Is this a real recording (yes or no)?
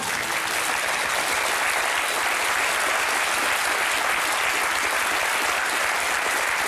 yes